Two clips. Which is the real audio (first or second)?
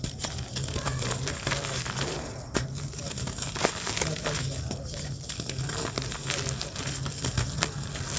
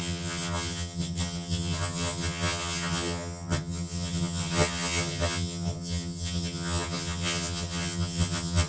first